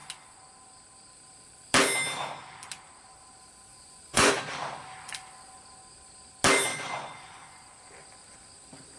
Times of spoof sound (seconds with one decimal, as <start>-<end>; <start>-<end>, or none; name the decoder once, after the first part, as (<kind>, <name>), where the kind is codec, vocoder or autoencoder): 3.7-4.3 (vocoder, Vocos); 6.7-7.9